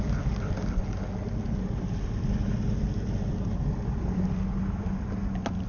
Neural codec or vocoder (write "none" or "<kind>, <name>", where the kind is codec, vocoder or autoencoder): none